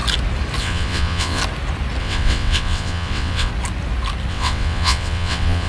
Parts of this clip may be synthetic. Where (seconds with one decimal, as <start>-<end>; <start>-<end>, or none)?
0.6-1.4; 2.0-3.5; 4.3-5.7